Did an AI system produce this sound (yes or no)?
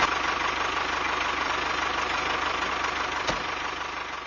no